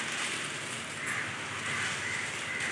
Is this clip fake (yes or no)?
no